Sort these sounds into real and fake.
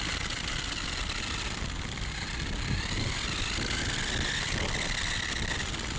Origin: real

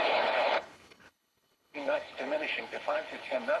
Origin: fake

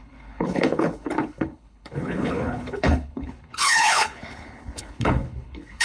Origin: fake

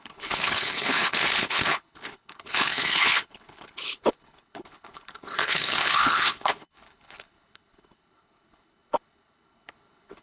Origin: fake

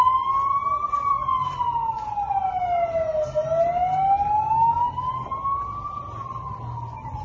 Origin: real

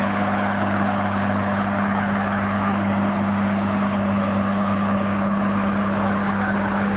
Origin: fake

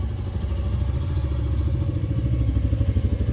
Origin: real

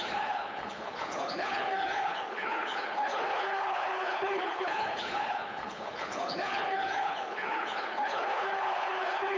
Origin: fake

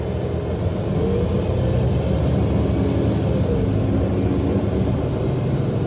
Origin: real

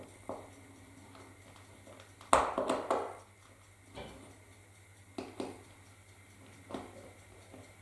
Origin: real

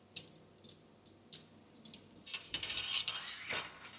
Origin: real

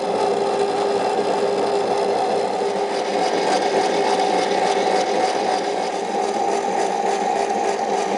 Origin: real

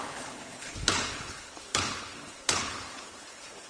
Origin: fake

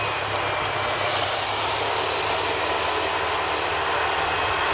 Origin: real